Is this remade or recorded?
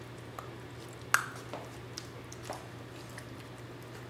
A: recorded